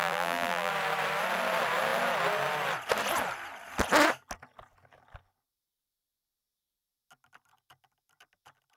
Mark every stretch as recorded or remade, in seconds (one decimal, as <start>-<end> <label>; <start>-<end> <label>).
0.0-0.7 remade; 0.7-8.8 recorded